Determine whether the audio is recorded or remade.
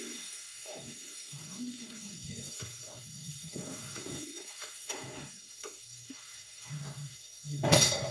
remade